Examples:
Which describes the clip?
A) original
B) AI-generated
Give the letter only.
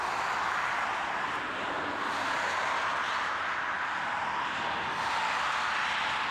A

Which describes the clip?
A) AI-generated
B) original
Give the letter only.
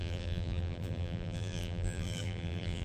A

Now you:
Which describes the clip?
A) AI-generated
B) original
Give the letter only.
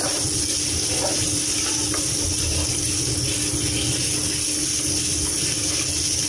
B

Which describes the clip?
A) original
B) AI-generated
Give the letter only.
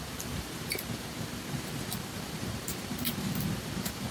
B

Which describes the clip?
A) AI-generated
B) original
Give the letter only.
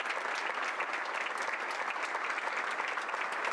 B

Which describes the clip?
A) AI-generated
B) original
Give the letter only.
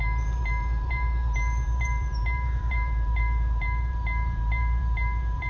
A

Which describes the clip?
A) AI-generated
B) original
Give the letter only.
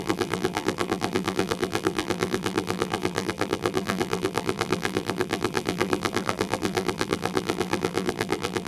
A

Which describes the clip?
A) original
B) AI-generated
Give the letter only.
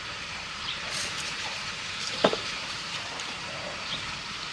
B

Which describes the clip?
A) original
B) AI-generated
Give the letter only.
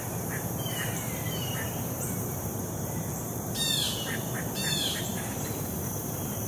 B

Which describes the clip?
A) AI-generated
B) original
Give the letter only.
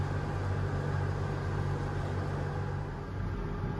B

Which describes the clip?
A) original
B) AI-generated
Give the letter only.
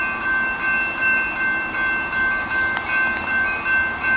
A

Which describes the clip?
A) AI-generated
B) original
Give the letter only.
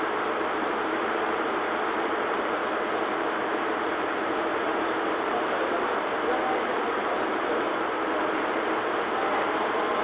A